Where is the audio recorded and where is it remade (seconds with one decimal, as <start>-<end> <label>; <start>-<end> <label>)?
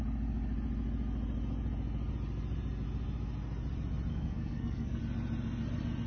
0.0-4.1 recorded; 4.1-5.0 remade; 5.0-6.1 recorded